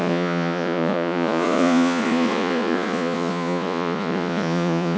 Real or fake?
fake